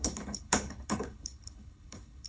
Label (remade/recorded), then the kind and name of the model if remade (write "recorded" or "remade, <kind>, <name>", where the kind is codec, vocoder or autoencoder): remade, codec, HILCodec